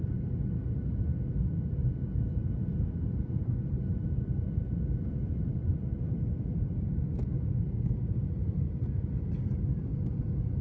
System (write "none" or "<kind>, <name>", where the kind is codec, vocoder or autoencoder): none